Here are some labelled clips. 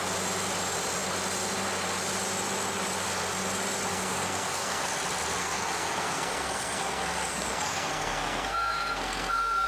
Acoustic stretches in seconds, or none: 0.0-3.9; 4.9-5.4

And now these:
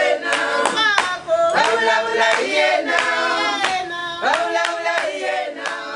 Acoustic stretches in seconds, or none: 0.0-6.0

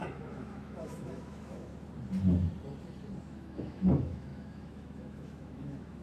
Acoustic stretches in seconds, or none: 1.7-3.2

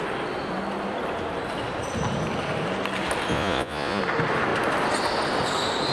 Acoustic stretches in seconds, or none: 0.0-3.3; 4.0-5.9

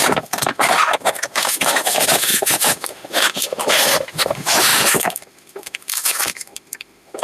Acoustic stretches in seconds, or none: none

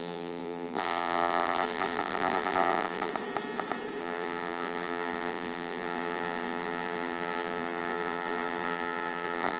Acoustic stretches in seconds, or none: 3.1-4.0

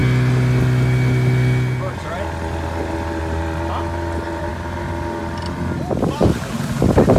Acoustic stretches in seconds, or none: 0.0-7.2

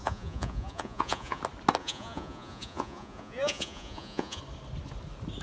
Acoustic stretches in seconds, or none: 1.4-1.8; 4.4-5.4